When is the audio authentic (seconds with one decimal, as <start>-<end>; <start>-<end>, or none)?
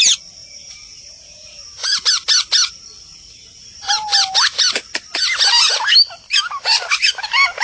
0.0-0.4; 2.0-7.6